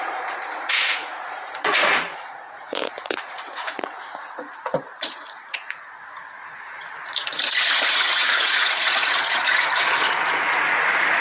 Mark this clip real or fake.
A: fake